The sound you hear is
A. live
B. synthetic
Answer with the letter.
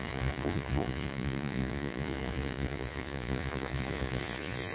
B